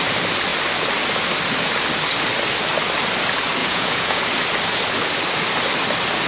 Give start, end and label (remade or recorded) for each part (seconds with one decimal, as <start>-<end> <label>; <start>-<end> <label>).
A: 0.0-3.6 recorded; 3.6-4.2 remade; 4.2-6.3 recorded